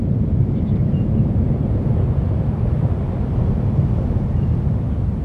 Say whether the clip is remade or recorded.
recorded